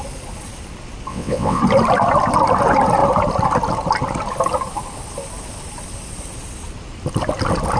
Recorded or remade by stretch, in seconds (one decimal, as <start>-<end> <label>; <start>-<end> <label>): 0.0-1.1 recorded; 1.1-1.6 remade; 1.6-7.8 recorded